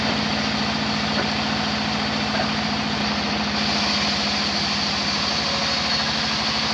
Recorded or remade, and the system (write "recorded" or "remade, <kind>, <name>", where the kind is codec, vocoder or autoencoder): recorded